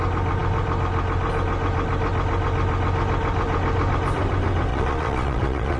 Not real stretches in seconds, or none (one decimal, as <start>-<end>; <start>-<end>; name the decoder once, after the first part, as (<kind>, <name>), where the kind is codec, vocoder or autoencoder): 4.7-5.8 (vocoder, Vocos)